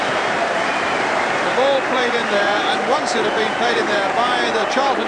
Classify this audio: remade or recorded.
remade